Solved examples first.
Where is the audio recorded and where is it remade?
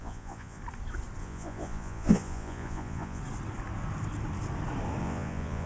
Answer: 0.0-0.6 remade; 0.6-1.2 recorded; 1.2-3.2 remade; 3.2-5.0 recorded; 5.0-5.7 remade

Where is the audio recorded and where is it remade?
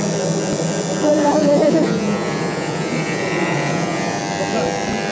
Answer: 0.0-1.1 recorded; 1.1-4.2 remade; 4.2-5.1 recorded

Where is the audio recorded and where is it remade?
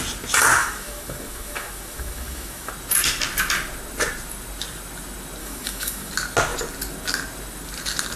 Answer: 0.0-0.6 recorded; 0.6-2.7 remade; 2.7-5.4 recorded; 5.4-6.1 remade; 6.1-8.2 recorded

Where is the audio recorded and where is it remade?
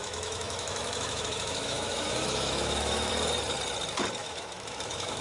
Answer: 0.0-3.1 remade; 3.1-4.2 recorded; 4.2-5.2 remade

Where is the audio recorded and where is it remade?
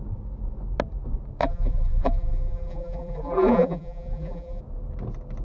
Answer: 0.0-1.4 recorded; 1.4-4.6 remade; 4.6-5.4 recorded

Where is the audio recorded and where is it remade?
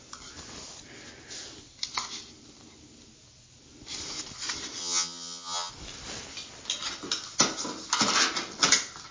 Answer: 0.0-4.8 recorded; 4.8-5.7 remade; 5.7-9.1 recorded